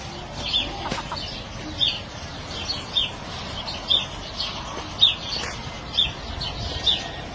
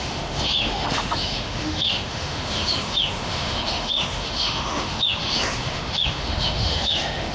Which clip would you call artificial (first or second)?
second